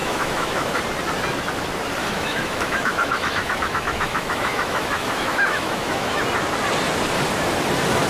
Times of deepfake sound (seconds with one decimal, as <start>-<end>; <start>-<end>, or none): 0.0-0.8; 2.0-6.2